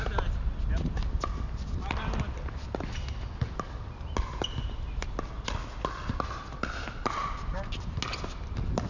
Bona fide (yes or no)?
yes